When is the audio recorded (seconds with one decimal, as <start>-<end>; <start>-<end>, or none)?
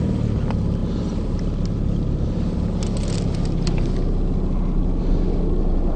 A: 0.0-6.0